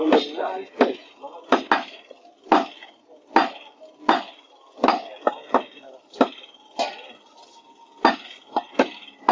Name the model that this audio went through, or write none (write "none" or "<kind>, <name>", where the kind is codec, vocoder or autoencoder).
none